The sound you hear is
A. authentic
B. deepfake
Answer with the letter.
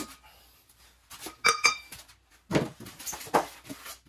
A